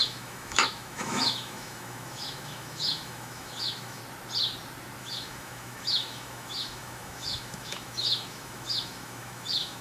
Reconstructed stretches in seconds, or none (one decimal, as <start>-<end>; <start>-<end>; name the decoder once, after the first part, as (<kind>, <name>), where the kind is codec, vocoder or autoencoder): 0.0-4.0 (autoencoder, DAC-VAE); 5.0-9.8